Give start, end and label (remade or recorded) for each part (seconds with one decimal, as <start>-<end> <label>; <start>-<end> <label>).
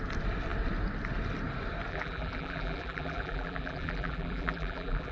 0.0-1.9 recorded; 1.9-5.1 remade